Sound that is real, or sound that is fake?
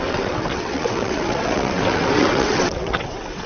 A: fake